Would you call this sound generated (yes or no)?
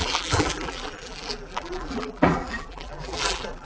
yes